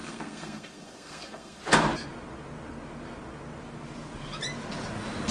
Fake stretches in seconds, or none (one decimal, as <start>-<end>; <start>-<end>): 0.0-1.6